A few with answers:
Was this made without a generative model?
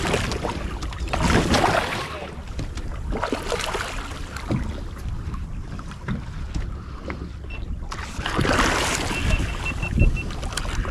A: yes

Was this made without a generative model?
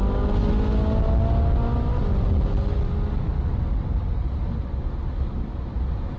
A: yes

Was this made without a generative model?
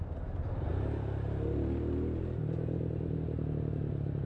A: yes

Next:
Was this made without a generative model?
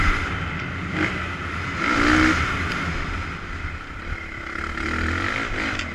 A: yes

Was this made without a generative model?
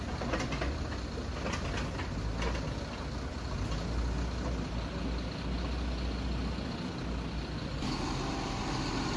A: yes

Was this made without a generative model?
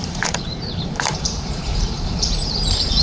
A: no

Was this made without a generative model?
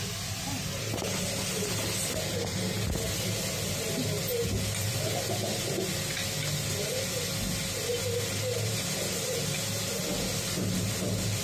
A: yes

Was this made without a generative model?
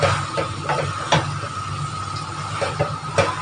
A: yes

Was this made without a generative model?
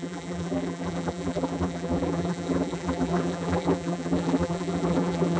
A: no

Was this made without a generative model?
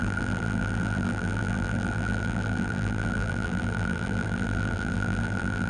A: no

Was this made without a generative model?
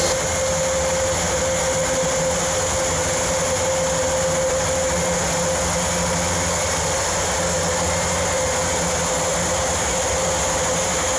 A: yes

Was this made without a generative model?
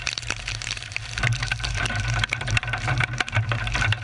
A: no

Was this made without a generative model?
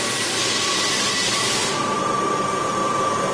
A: no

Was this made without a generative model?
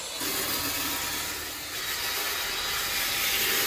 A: yes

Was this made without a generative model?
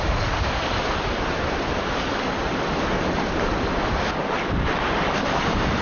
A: no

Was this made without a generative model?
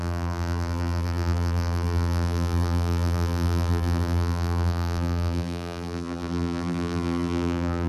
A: no